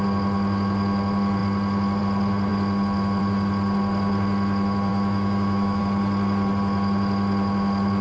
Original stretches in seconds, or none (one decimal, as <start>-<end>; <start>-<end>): 0.0-4.9; 5.8-8.0